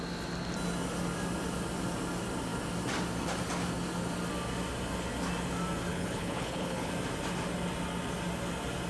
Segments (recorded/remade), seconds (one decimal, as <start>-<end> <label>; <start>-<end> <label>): 0.0-5.9 recorded; 5.9-6.9 remade; 6.9-8.9 recorded